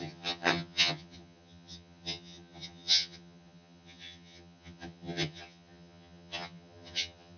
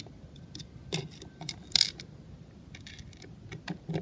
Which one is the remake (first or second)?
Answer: first